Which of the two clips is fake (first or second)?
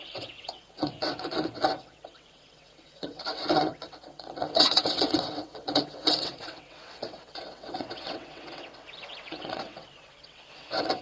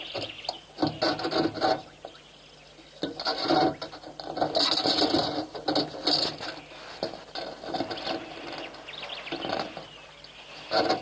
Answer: first